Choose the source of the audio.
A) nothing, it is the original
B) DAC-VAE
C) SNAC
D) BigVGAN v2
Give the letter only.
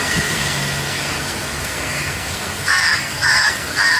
C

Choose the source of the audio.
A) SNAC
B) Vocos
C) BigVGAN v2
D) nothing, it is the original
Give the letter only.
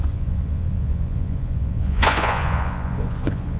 B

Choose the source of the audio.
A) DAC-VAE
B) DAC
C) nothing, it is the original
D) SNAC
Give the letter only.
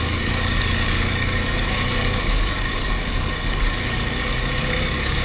B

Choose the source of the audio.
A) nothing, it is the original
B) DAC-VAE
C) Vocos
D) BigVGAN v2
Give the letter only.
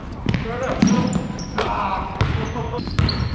A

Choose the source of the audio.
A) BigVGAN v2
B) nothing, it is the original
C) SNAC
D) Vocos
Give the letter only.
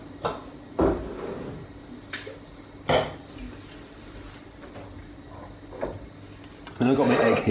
B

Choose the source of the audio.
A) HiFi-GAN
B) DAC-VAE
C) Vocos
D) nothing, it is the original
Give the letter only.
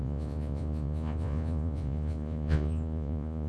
C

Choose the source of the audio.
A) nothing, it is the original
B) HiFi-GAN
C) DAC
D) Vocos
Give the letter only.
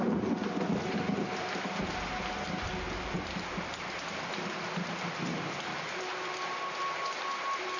A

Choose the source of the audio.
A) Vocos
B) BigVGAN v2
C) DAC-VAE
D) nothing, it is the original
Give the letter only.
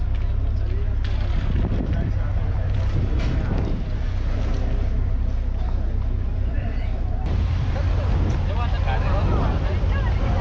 D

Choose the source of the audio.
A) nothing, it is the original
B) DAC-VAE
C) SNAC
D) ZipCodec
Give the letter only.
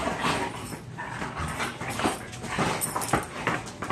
A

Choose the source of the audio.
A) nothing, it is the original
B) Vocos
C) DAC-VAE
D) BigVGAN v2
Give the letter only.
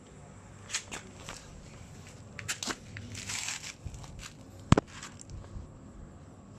A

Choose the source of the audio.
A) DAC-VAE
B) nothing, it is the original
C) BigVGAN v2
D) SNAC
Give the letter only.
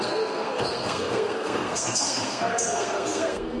D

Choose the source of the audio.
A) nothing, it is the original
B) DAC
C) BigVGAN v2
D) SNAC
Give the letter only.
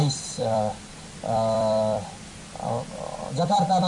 C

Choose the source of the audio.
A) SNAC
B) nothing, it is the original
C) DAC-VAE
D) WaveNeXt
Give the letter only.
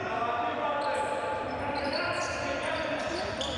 B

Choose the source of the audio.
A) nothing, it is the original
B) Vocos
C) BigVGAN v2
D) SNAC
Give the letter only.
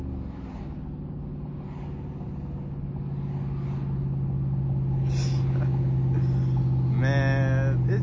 A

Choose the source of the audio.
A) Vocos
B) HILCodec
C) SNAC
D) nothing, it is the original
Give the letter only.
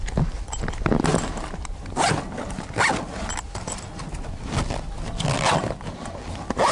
D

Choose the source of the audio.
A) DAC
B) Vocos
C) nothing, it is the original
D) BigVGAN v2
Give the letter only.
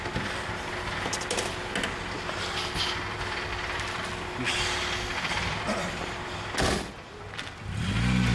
C